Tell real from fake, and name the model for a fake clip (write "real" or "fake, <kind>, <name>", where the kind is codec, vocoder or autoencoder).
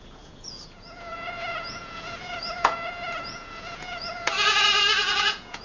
fake, vocoder, Vocos